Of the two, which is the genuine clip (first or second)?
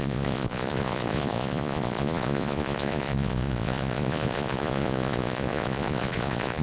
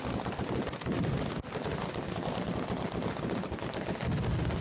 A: second